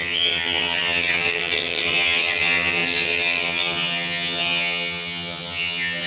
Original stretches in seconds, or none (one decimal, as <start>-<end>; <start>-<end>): none